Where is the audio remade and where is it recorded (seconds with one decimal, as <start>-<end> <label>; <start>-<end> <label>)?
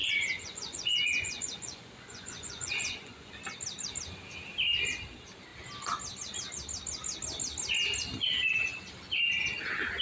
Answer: 0.0-3.3 remade; 3.3-10.0 recorded